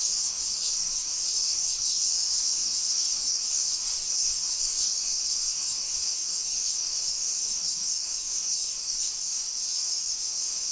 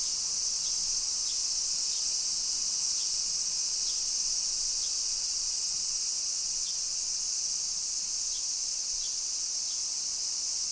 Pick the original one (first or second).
second